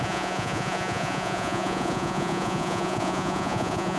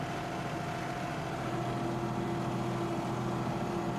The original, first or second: second